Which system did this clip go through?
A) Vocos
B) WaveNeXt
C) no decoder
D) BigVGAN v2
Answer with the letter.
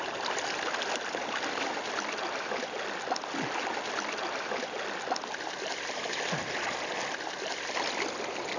C